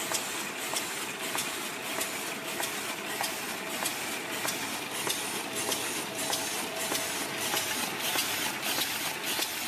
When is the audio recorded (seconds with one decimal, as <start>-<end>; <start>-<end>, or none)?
0.0-9.7